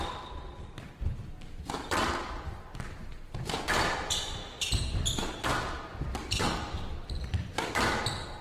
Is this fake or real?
real